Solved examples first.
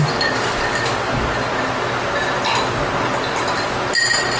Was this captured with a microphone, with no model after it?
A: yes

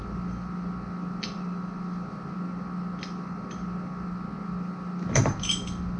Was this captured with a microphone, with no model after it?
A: yes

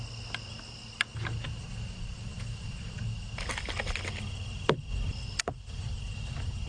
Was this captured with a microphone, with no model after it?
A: yes